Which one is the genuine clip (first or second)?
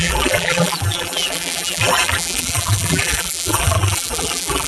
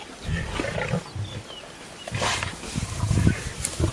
second